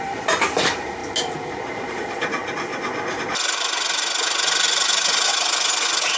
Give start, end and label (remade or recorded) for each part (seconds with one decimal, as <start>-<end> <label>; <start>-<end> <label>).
0.0-1.0 remade; 1.0-1.9 recorded; 1.9-2.4 remade; 2.4-6.2 recorded